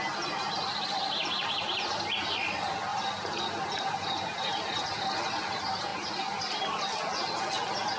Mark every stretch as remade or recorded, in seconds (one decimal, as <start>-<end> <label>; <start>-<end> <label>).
0.0-8.0 recorded